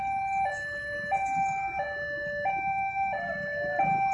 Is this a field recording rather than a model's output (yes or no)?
yes